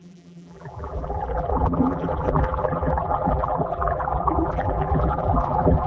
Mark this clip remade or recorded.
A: remade